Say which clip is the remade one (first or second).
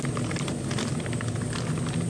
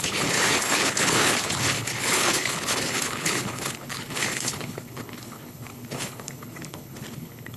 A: second